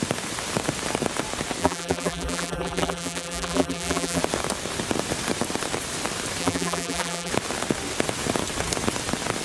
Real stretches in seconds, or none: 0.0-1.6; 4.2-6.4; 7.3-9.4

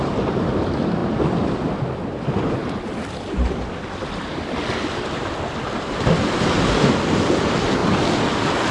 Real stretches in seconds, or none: 0.0-1.0; 1.8-2.6; 4.3-8.7

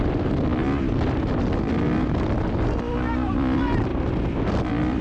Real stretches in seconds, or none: 0.6-1.6; 3.9-4.5

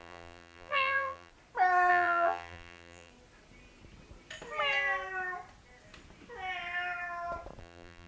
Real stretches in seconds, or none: 1.3-1.9; 3.1-7.6